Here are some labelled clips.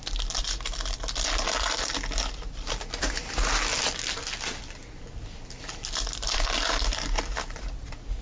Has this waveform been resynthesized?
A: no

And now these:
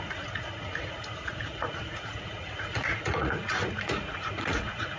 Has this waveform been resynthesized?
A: yes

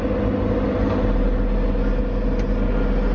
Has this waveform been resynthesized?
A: no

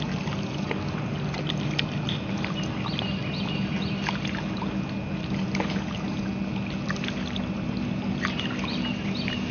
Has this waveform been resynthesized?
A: no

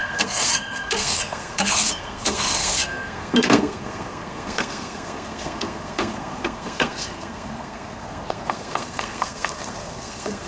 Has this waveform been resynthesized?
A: yes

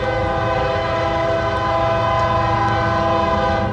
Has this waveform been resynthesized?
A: no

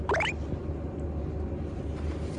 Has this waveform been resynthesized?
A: no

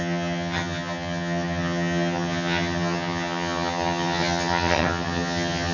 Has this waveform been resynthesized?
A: yes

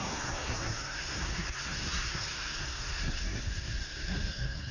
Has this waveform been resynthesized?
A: yes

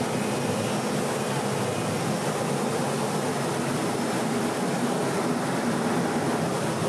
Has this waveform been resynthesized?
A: no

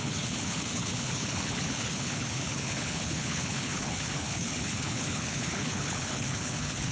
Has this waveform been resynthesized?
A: yes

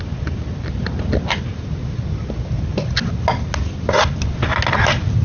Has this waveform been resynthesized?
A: no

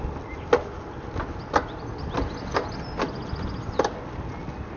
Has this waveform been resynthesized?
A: no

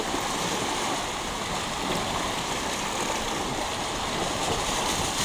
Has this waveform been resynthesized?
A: no